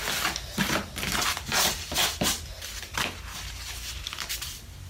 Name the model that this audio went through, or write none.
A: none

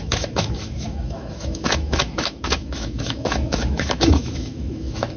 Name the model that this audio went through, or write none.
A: autoencoder, DAC-VAE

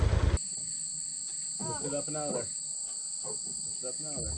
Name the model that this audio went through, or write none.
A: none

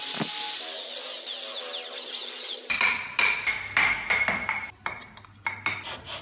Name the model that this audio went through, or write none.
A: none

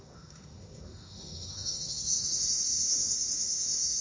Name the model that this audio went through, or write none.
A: autoencoder, DAC-VAE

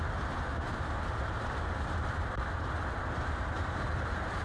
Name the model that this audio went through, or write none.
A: none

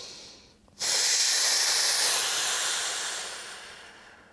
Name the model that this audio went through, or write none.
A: none